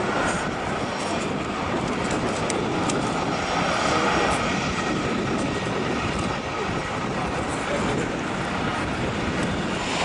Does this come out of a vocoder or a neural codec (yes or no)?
yes